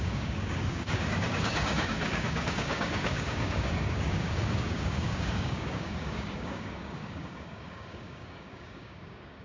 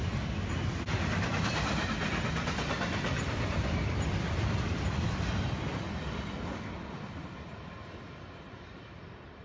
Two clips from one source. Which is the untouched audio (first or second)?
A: second